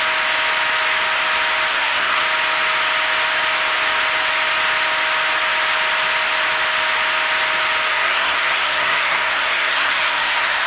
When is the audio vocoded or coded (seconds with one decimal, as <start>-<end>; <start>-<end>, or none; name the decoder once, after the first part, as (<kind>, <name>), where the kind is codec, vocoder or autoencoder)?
1.7-2.2 (codec, SNAC); 7.9-10.7